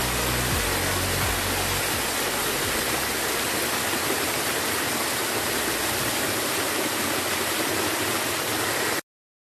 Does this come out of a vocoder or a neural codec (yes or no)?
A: no